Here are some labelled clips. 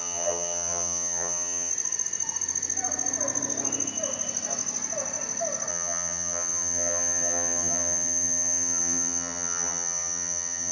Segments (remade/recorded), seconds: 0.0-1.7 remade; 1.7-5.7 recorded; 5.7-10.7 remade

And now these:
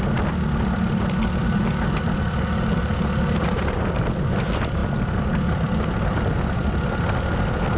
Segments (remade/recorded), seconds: 0.0-7.8 recorded

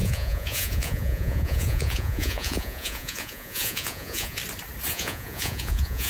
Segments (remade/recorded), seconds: 0.0-4.4 remade; 4.4-4.9 recorded; 4.9-6.1 remade